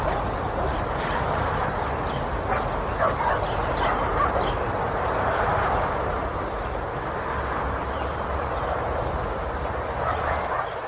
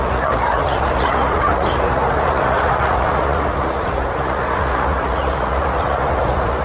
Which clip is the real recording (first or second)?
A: first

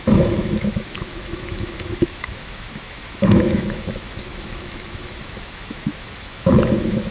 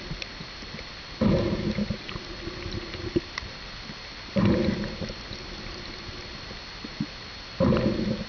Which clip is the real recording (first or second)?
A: second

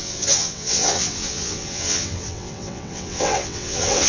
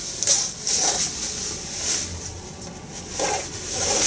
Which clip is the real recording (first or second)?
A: second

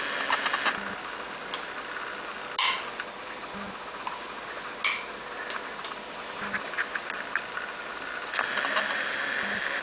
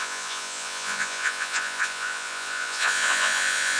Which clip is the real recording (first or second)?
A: first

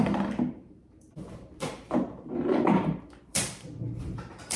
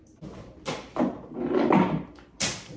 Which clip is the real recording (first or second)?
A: second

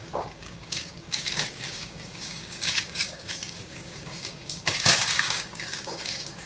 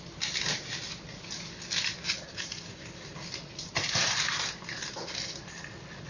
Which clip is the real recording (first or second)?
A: second